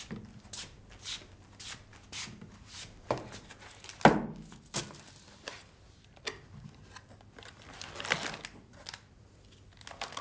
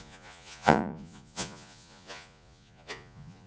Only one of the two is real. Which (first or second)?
first